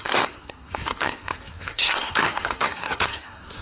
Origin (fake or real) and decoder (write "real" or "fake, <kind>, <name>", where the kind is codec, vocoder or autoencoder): fake, codec, SNAC